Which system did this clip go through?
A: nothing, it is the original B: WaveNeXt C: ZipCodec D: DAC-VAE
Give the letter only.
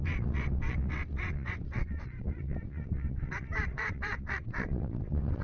B